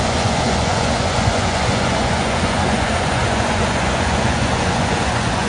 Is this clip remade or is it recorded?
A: remade